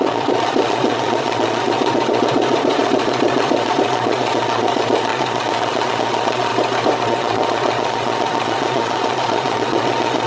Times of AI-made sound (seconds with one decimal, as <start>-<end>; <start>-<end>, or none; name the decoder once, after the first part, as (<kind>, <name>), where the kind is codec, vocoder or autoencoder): 0.0-6.5 (vocoder, Vocos); 7.0-10.3